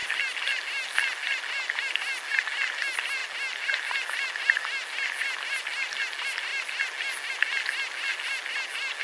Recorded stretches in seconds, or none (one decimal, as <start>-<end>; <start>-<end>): 0.0-9.0